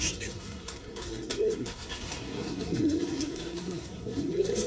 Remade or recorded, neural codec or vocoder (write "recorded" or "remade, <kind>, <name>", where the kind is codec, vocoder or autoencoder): remade, codec, SNAC